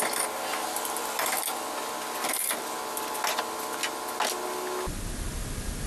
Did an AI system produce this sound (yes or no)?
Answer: no